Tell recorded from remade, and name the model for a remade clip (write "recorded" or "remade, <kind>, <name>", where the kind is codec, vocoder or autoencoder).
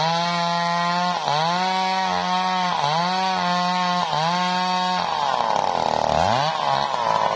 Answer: recorded